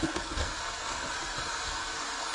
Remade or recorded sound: remade